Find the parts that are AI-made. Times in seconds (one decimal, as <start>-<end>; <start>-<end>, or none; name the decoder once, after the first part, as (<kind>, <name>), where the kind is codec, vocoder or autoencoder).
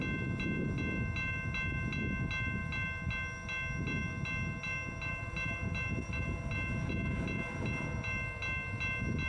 none